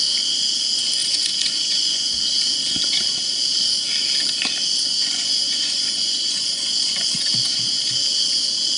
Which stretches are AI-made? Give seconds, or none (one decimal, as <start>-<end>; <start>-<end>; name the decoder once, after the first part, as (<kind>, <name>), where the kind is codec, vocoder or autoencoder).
1.0-2.1 (vocoder, Vocos); 4.9-7.9